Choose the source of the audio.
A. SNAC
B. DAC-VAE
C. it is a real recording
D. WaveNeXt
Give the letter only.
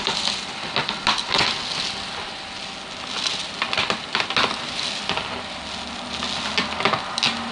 C